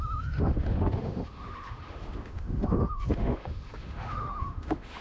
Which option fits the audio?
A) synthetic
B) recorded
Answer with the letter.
A